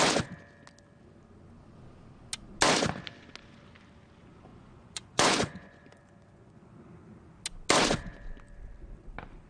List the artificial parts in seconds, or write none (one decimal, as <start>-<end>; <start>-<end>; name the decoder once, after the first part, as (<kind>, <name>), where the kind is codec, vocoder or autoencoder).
4.5-6.9 (vocoder, Vocos)